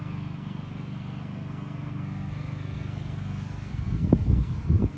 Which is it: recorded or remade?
remade